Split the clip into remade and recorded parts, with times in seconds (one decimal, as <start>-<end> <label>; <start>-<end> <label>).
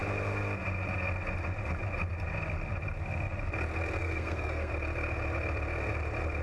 0.0-4.0 recorded; 4.0-4.7 remade; 4.7-6.4 recorded